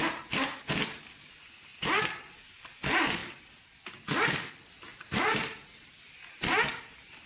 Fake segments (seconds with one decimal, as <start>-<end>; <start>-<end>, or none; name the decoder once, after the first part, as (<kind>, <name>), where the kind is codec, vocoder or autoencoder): 4.9-5.9 (vocoder, BigVGAN v2)